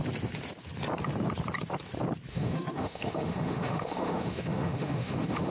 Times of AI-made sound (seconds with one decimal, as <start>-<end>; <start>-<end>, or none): 2.3-5.5